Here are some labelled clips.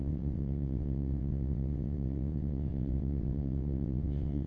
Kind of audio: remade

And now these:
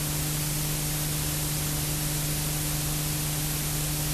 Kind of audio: recorded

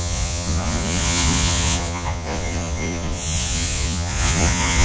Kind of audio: remade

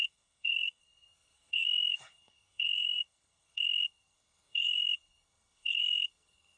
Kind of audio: remade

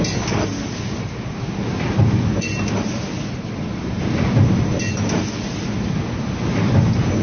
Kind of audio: recorded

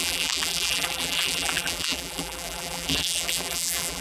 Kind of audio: remade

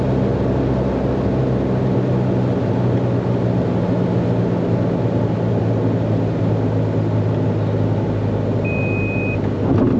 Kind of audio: recorded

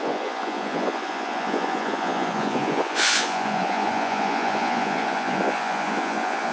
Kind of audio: remade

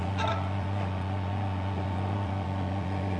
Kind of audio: remade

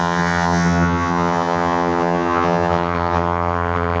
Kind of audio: remade